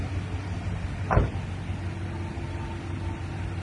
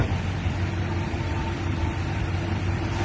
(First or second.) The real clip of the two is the first